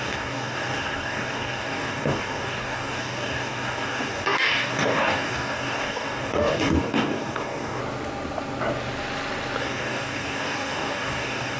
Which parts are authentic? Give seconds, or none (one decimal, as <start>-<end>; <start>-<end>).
7.8-9.6

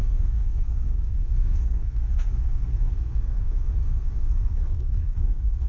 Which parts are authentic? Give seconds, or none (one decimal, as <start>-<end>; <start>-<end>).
none

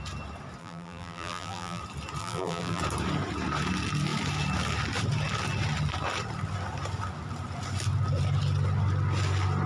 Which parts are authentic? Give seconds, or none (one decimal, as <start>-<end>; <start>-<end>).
0.0-0.6; 1.8-2.2; 2.8-9.7

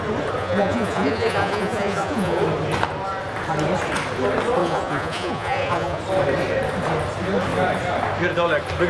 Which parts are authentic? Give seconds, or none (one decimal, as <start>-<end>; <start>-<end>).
0.0-0.4; 2.4-4.6; 6.0-8.9